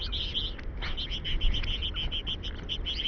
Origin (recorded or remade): recorded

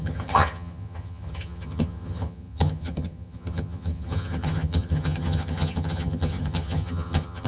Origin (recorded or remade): remade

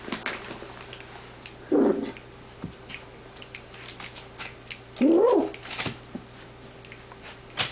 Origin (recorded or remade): recorded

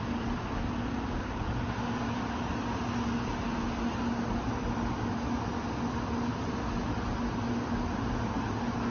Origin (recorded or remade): recorded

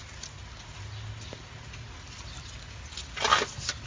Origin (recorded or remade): recorded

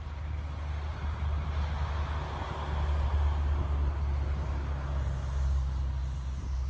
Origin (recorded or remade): recorded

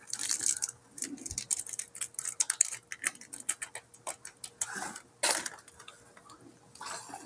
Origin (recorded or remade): recorded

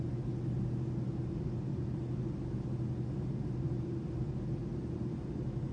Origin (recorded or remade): recorded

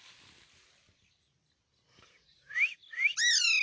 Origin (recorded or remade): recorded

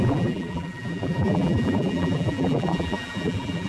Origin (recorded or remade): remade